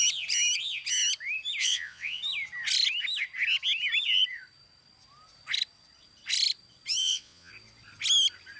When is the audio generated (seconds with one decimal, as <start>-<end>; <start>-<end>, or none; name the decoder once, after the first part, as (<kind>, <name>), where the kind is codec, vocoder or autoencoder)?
1.6-2.2 (vocoder, WaveNeXt); 7.0-7.5